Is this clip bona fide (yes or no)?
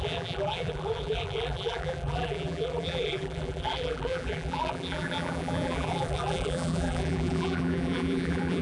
no